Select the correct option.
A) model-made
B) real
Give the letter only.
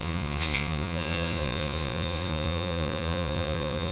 A